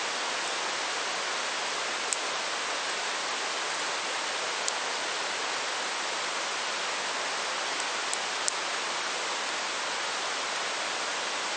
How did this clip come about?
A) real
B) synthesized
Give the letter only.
A